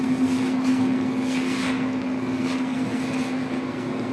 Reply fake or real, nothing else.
fake